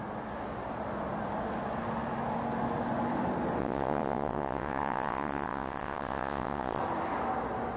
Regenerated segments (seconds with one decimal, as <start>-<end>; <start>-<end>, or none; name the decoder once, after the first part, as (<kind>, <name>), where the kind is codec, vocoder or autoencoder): 3.6-6.8 (vocoder, WaveNeXt)